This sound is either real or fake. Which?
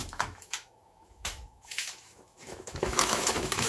fake